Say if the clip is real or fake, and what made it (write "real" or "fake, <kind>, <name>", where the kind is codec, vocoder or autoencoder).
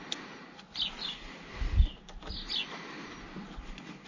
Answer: real